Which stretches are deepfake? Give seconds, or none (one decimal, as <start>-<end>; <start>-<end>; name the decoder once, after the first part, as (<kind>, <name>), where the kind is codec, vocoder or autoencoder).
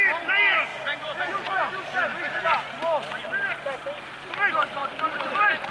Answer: 0.7-1.3 (vocoder, Vocos); 2.1-2.7